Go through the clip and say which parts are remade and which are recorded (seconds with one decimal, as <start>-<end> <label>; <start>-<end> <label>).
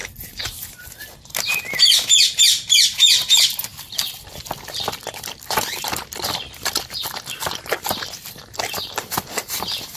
0.0-2.4 recorded; 2.4-10.0 remade